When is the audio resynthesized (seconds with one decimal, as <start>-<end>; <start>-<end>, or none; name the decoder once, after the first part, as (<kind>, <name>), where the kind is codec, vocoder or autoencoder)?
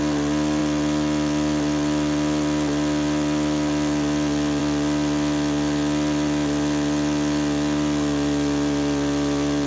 none